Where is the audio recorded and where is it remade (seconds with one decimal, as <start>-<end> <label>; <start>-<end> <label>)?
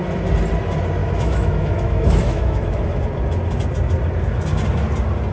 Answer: 0.0-1.0 recorded; 1.0-3.0 remade; 3.0-5.3 recorded